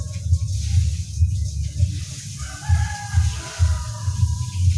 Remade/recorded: recorded